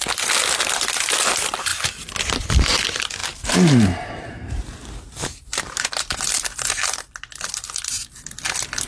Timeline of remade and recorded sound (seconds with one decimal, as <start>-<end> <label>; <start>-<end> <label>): 0.0-3.2 recorded; 3.2-5.9 remade; 5.9-8.9 recorded